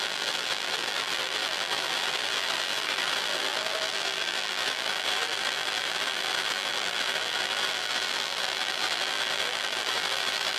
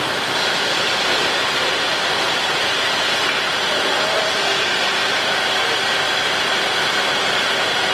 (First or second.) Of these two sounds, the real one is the second